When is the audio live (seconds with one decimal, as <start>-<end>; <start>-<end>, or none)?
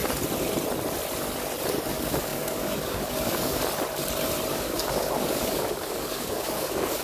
0.0-1.9; 3.6-4.5